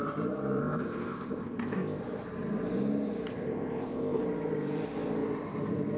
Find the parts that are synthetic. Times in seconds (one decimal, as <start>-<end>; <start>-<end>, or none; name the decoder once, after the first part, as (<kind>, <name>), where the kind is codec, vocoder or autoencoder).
0.6-2.0 (codec, ZipCodec); 3.3-4.2